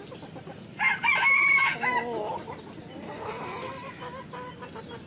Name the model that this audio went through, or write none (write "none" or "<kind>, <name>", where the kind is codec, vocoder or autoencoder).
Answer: none